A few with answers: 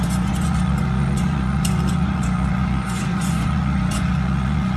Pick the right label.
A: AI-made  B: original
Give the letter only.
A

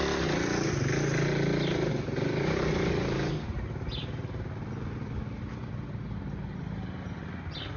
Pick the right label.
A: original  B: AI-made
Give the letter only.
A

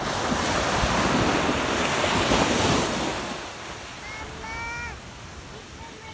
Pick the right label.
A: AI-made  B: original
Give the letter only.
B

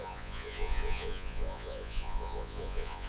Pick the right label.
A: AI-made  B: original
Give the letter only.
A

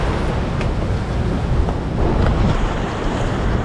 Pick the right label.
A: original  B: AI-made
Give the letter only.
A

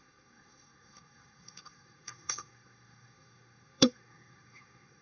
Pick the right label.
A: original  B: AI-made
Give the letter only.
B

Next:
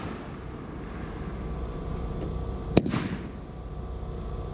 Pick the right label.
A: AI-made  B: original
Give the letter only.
B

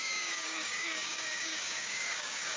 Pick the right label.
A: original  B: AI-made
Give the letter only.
B